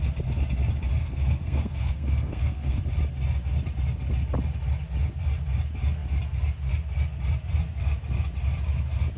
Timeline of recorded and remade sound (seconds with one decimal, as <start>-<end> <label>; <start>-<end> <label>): 0.0-1.0 recorded; 1.0-2.8 remade; 2.8-9.2 recorded